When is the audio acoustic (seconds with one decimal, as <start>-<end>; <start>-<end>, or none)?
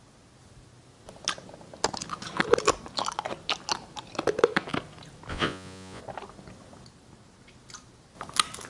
0.0-5.3; 6.0-8.7